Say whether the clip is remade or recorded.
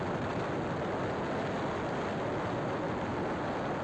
recorded